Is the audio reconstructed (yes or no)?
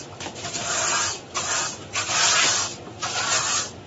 no